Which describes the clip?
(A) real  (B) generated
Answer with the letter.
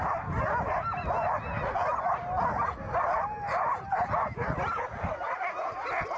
A